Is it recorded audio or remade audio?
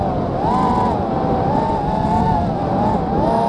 recorded